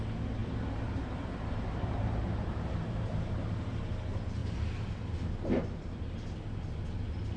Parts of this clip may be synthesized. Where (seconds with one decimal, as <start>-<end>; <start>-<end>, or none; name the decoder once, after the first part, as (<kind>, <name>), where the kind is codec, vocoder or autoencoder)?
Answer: 0.4-3.8 (vocoder, BigVGAN v2)